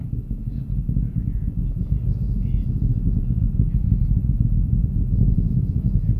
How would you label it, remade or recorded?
remade